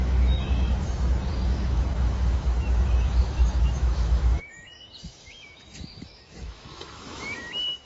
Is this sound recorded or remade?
remade